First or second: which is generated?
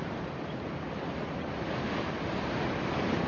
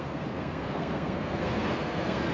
second